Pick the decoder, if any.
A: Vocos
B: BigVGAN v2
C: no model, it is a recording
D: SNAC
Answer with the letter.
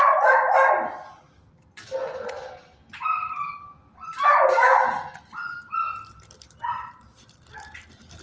C